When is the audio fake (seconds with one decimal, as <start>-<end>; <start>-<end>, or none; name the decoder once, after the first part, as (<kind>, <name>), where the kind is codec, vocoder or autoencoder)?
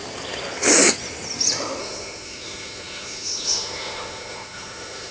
1.8-5.1 (autoencoder, DAC-VAE)